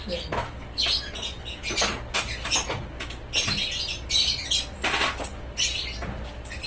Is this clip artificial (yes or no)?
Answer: no